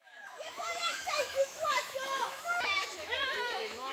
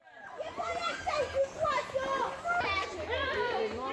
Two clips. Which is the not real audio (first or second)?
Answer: first